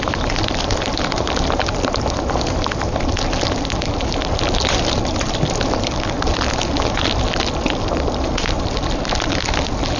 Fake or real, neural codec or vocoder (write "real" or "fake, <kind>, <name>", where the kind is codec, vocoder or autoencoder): real